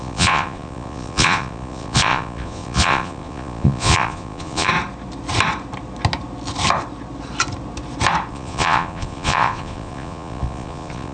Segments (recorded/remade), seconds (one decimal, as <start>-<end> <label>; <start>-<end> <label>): 0.0-4.7 remade; 4.7-8.3 recorded; 8.3-11.1 remade